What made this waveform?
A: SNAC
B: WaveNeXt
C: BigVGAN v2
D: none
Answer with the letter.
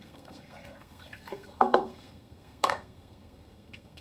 A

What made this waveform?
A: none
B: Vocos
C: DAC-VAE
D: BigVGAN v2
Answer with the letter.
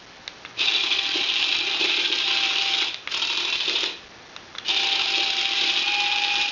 A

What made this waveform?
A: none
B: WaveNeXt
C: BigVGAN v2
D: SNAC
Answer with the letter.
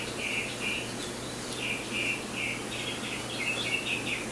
A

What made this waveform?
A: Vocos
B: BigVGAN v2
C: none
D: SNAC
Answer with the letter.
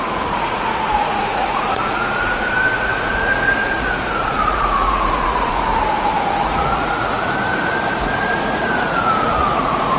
A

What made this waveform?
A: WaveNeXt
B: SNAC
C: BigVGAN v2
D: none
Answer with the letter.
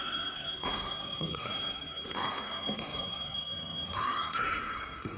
B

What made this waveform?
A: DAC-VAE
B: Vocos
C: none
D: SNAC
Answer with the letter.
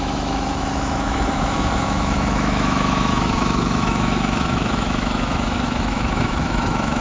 A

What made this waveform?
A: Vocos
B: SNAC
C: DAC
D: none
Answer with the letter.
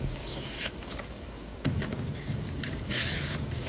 C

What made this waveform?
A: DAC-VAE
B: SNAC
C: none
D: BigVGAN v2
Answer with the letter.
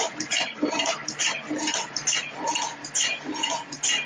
C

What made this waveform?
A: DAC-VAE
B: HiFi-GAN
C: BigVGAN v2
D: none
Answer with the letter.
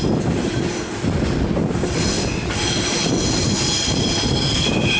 D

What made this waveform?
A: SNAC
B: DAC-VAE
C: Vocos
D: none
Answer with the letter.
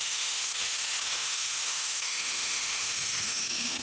B